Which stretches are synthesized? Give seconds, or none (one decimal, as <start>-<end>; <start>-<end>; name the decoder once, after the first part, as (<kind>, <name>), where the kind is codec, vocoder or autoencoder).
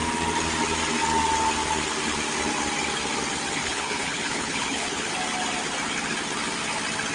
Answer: 3.6-5.1 (codec, HILCodec)